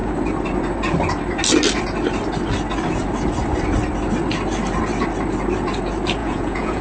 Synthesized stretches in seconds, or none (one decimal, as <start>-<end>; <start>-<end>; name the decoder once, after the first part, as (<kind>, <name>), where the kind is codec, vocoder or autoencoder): 6.2-6.8 (vocoder, Vocos)